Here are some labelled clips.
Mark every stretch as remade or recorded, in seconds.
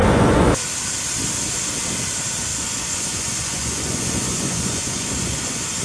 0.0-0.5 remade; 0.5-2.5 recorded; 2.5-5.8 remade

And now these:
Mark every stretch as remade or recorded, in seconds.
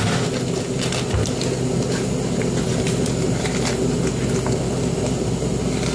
0.0-5.9 recorded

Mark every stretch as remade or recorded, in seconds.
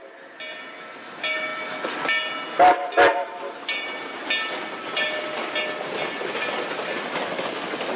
0.0-8.0 recorded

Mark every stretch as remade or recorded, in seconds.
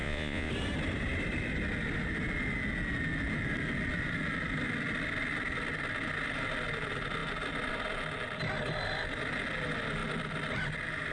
0.0-0.5 remade; 0.5-11.1 recorded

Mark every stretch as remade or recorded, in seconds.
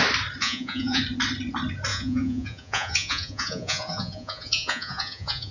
0.0-0.4 recorded; 0.4-1.0 remade; 1.0-1.9 recorded; 1.9-5.5 remade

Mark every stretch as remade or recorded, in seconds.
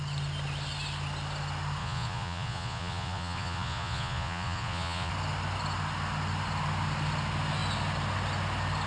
0.0-1.8 recorded; 1.8-5.1 remade; 5.1-8.9 recorded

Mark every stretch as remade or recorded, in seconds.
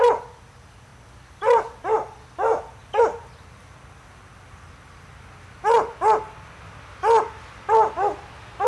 0.0-8.7 recorded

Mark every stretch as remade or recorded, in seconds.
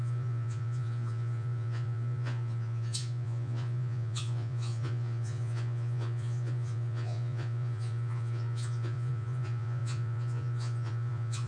0.0-11.5 remade